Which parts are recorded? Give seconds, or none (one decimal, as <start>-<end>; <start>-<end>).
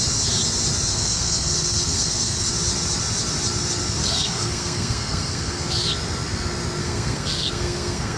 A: 0.0-0.9; 2.5-4.0; 5.7-6.8